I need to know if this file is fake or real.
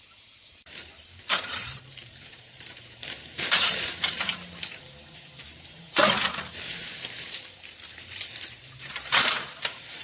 fake